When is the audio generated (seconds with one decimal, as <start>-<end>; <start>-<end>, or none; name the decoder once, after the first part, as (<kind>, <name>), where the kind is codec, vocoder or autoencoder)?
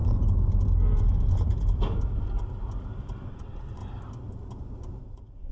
3.3-3.8 (vocoder, WaveNeXt); 5.0-5.5